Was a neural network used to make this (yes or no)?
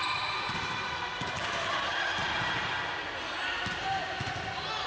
no